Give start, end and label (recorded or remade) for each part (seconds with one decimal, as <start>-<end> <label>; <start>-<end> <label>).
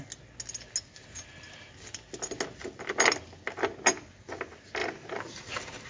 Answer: 0.0-5.9 recorded